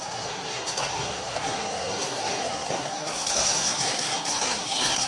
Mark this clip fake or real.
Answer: fake